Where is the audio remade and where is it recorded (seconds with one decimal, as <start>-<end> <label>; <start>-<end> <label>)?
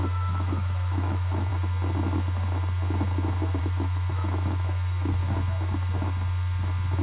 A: 0.0-1.5 remade; 1.5-3.6 recorded; 3.6-5.2 remade; 5.2-7.0 recorded